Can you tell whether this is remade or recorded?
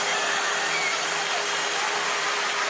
recorded